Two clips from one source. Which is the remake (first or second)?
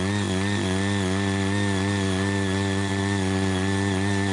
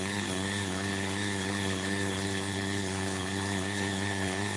second